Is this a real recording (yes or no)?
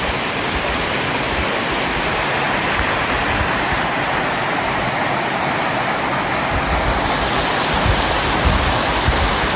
yes